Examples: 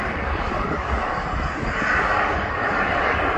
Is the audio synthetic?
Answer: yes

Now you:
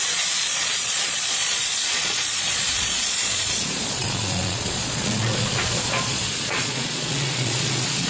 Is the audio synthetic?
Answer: yes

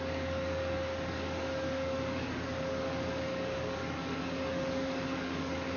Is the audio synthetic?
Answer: yes